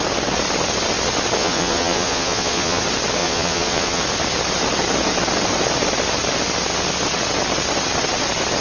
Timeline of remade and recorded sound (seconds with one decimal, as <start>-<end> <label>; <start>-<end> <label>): 0.0-1.4 recorded; 1.4-2.8 remade; 2.8-3.2 recorded; 3.2-4.0 remade; 4.0-8.6 recorded